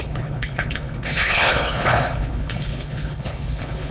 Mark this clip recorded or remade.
remade